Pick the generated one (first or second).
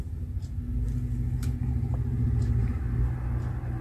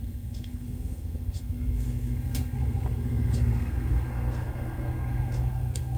second